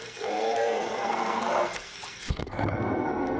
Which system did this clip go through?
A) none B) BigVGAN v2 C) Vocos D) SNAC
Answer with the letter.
D